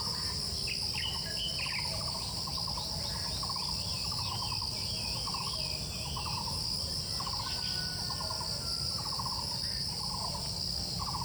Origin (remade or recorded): recorded